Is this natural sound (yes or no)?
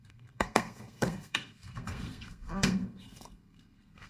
no